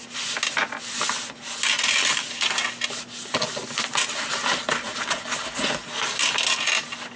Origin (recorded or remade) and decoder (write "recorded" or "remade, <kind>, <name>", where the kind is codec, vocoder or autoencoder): recorded